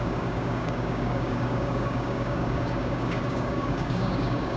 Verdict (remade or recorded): remade